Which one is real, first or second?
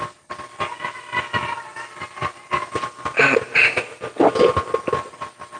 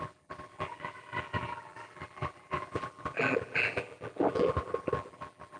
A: first